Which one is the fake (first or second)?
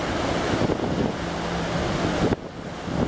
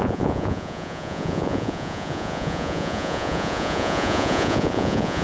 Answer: second